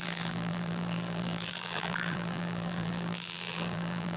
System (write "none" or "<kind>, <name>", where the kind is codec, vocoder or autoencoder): vocoder, BigVGAN v2